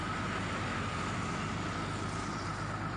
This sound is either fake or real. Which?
real